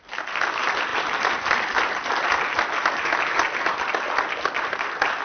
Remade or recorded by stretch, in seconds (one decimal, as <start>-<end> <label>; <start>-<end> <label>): 0.0-5.2 recorded